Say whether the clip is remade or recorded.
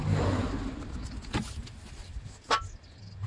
recorded